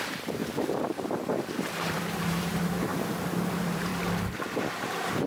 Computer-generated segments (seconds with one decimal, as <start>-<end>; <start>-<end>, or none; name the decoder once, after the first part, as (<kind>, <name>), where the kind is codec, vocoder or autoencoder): 0.0-2.9 (vocoder, BigVGAN v2); 3.5-3.9; 4.7-5.3